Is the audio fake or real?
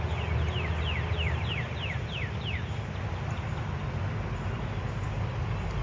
real